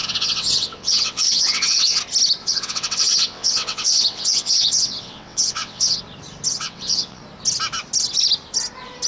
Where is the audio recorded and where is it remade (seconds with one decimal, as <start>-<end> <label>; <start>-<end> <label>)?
0.0-2.0 remade; 2.0-2.4 recorded; 2.4-6.0 remade; 6.0-6.5 recorded; 6.5-7.2 remade; 7.2-9.1 recorded